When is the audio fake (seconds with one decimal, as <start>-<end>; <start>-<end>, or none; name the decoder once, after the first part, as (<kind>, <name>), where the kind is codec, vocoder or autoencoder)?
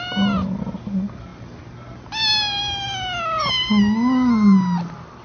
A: none